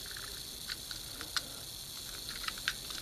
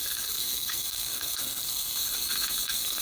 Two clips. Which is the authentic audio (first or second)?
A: first